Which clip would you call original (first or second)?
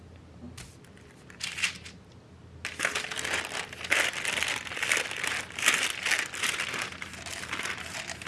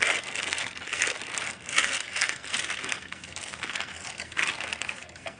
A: first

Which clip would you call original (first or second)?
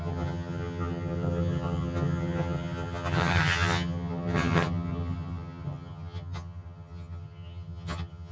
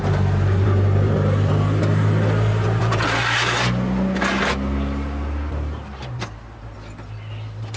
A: second